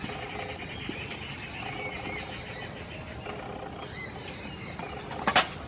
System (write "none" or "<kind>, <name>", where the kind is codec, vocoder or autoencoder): none